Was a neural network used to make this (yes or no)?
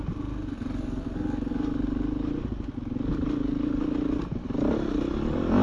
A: no